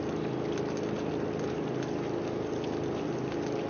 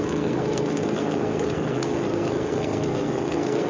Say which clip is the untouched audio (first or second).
first